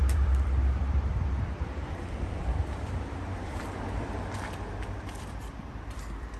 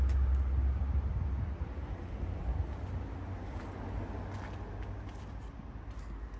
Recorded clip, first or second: second